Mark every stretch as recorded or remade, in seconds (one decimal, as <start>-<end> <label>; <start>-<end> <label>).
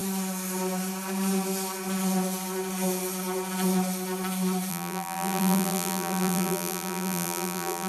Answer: 0.0-4.7 recorded; 4.7-7.9 remade